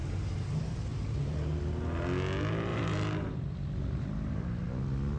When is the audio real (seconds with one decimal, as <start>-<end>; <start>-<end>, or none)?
0.0-0.9; 1.6-2.7; 4.4-5.2